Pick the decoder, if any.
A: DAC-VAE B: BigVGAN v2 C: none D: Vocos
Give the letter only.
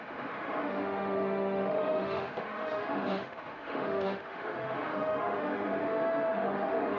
A